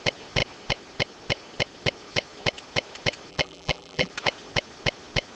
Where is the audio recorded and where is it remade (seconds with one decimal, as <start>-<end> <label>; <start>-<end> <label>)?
0.0-3.3 recorded; 3.3-4.1 remade; 4.1-5.3 recorded